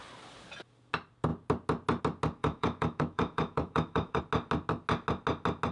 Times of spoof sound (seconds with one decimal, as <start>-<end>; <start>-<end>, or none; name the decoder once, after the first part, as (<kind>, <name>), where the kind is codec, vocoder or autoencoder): 2.4-4.2 (autoencoder, DAC-VAE)